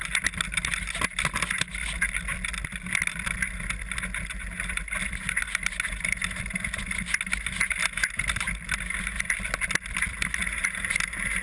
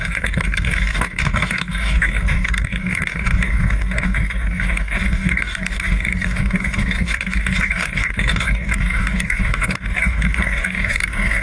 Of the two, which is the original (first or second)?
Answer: first